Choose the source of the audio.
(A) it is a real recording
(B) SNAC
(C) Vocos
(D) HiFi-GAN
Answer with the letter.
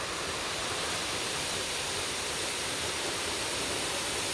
A